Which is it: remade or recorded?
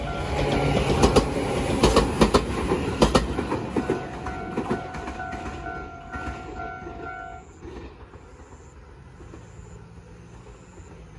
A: recorded